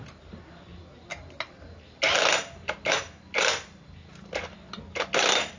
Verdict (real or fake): real